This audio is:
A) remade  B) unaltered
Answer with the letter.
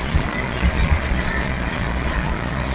A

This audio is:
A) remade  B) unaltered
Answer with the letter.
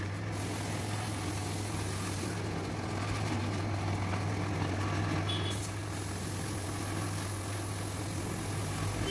B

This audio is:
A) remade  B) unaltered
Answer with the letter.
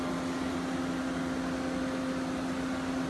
B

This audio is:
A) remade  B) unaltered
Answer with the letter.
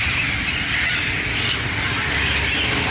B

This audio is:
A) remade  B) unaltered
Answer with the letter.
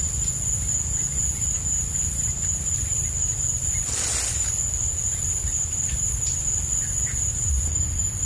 B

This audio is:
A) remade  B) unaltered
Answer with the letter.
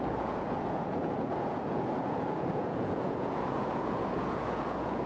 A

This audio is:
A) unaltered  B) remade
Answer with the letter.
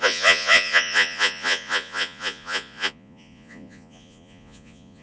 B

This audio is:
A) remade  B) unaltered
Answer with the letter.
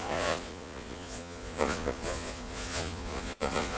A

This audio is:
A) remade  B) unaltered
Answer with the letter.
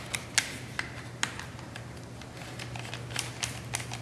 B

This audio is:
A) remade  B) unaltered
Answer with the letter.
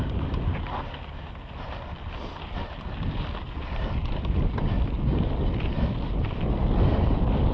B